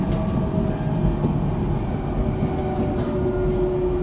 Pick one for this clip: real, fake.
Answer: real